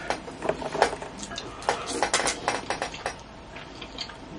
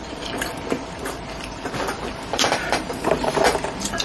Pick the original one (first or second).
first